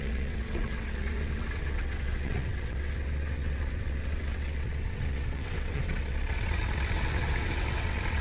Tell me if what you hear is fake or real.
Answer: fake